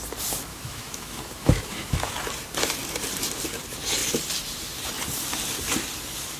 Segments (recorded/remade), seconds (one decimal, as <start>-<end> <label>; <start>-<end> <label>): 0.0-0.5 recorded; 0.5-2.1 remade; 2.1-6.4 recorded